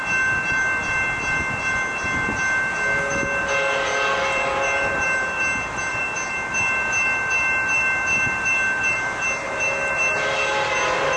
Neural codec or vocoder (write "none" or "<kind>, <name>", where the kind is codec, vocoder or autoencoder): none